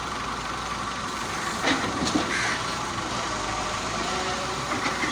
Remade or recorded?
remade